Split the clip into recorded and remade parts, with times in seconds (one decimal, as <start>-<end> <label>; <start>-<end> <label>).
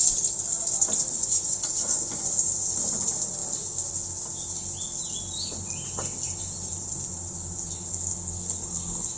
0.0-1.2 recorded; 1.2-2.3 remade; 2.3-9.2 recorded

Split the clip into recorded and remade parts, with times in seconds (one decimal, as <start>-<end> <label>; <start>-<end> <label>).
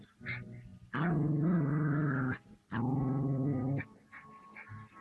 0.0-5.0 recorded